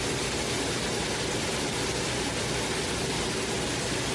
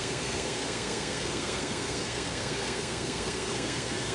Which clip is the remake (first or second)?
second